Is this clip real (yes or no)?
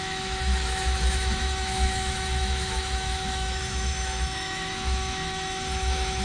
no